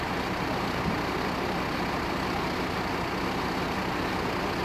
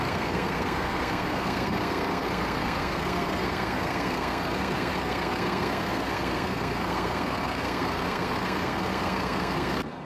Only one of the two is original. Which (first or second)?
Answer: first